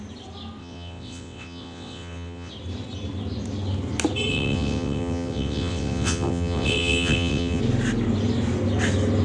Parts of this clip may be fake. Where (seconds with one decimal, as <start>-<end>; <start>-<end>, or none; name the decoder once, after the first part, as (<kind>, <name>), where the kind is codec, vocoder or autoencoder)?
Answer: 0.6-2.5 (vocoder, WaveNeXt); 4.3-7.6